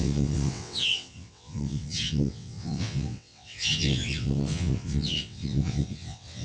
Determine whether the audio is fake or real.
fake